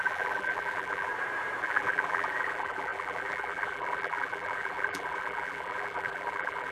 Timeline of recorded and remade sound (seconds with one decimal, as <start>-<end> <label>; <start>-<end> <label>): 0.0-1.1 remade; 1.1-1.6 recorded; 1.6-6.7 remade